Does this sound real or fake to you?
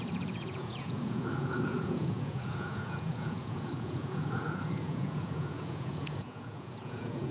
fake